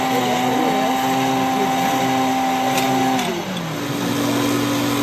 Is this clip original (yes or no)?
yes